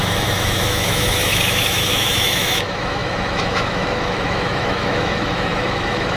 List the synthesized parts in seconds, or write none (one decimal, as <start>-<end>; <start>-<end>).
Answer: 0.0-6.2